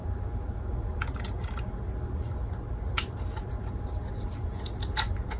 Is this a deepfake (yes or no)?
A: no